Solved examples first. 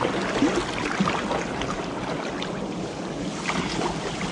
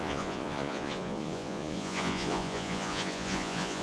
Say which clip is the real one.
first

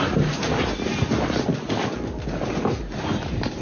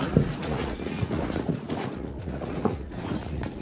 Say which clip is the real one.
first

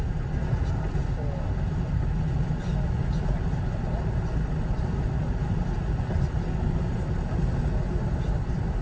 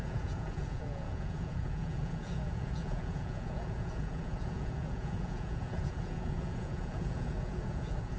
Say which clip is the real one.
first